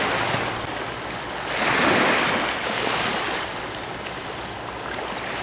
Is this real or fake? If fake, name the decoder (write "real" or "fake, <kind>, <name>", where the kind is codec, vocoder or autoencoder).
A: real